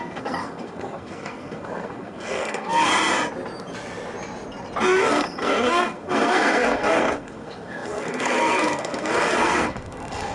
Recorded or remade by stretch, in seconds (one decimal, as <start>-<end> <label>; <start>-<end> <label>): 0.0-2.9 remade; 2.9-5.0 recorded; 5.0-10.3 remade